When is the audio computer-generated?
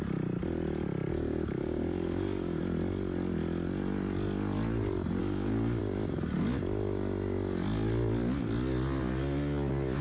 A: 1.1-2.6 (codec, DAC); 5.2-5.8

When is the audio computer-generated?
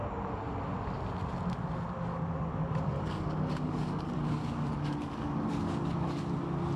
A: 2.1-6.2 (codec, DAC)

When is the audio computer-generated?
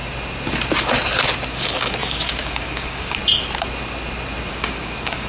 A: 1.5-3.2 (codec, DAC); 4.5-5.3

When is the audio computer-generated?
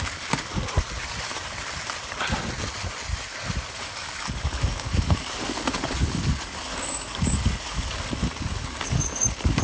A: 0.0-0.5 (codec, DAC); 3.7-9.6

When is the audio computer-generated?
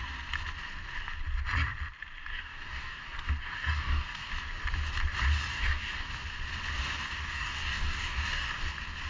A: 2.3-4.3 (codec, DAC); 5.5-6.1; 7.2-8.6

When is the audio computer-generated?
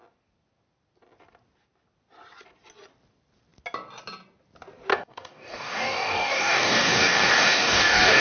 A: 4.9-8.2 (codec, DAC)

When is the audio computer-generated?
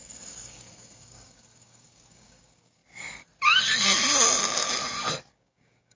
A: 0.0-2.8 (codec, DAC); 5.3-6.0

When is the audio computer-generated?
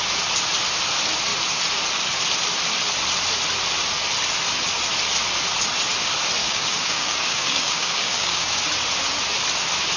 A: 6.4-8.6 (codec, DAC)